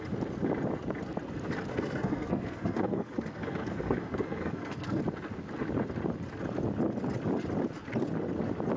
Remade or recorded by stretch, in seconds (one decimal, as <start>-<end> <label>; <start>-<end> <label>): 0.0-1.7 recorded; 1.7-5.0 remade; 5.0-8.8 recorded